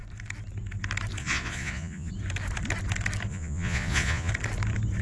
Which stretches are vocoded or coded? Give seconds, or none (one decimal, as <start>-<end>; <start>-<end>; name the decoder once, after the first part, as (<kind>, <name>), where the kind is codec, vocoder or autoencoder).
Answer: 1.2-2.1 (vocoder, Vocos); 3.3-4.3